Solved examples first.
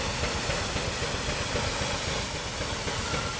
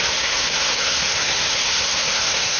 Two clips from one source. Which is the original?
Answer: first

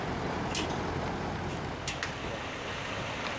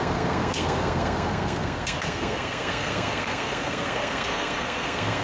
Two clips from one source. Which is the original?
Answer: first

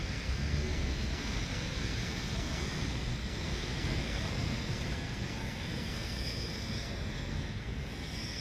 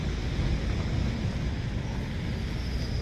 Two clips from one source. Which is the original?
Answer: second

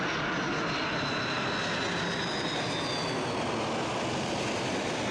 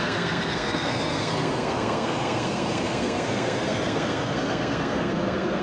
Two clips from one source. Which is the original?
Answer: first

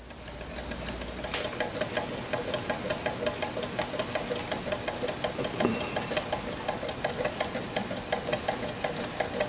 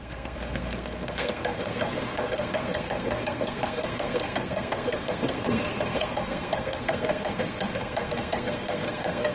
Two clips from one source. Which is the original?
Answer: first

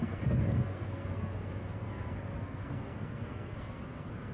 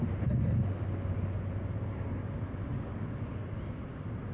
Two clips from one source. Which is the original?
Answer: second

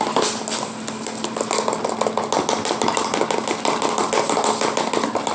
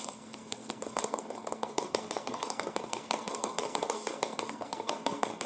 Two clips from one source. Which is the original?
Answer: first